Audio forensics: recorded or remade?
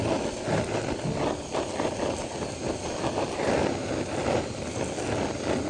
recorded